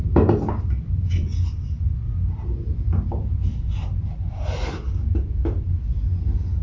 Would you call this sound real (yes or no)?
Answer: yes